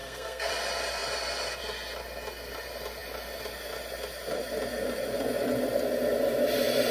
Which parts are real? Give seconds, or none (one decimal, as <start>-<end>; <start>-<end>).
0.5-6.9